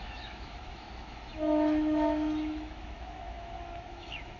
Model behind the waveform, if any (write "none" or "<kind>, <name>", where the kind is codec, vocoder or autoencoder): autoencoder, DAC-VAE